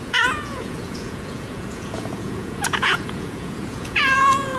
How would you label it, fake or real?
fake